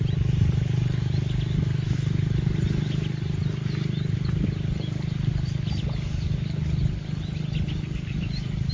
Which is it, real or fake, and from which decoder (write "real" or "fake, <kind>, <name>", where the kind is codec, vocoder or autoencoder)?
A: real